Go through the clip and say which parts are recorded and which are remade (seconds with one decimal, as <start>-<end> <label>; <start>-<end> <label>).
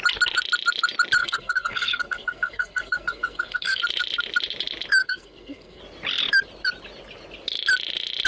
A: 0.0-1.2 recorded; 1.2-3.8 remade; 3.8-5.0 recorded; 5.0-5.8 remade; 5.8-8.3 recorded